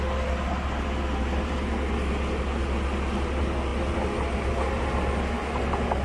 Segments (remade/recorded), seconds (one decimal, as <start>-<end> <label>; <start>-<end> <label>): 0.0-6.0 recorded